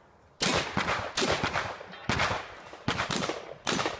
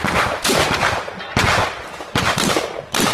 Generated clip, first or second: second